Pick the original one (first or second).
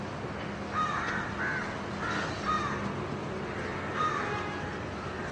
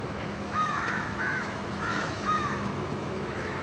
first